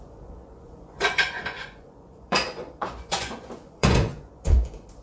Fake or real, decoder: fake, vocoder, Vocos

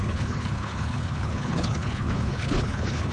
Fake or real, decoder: fake, codec, HILCodec